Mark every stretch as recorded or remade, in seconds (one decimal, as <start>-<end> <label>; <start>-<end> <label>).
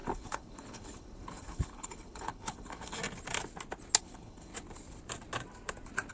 0.0-3.0 remade; 3.0-4.0 recorded; 4.0-4.5 remade; 4.5-6.1 recorded